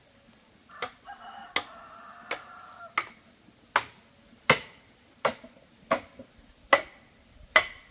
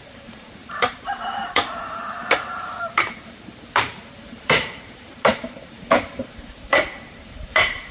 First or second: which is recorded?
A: first